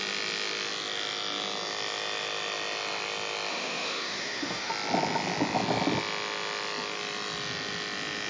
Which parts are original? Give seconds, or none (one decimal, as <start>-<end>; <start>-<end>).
0.0-3.5; 4.7-8.3

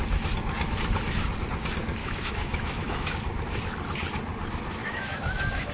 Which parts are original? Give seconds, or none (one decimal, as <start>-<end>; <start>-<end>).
0.0-2.0; 3.1-4.8

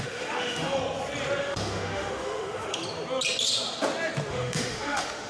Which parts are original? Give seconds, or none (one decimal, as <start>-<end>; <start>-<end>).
0.8-1.4; 2.8-4.3

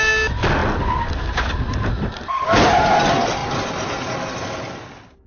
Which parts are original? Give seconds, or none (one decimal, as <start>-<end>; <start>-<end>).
0.0-5.3

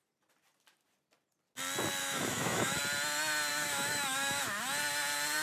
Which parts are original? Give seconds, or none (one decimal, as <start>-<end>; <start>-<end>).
0.0-2.0; 2.8-3.5; 4.4-5.4

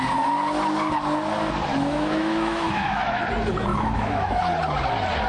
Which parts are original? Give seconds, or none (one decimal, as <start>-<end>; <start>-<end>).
0.0-1.7; 3.2-3.7; 4.4-5.3

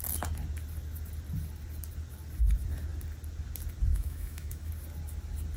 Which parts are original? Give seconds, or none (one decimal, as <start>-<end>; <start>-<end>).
0.0-3.9; 4.7-5.6

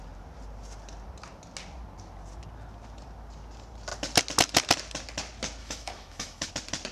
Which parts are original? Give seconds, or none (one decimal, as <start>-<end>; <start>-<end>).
0.0-5.6; 6.5-6.9